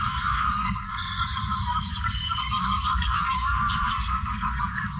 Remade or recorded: remade